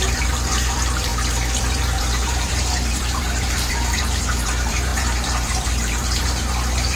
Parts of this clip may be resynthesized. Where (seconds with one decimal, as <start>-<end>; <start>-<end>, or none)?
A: 0.0-1.1; 1.6-7.0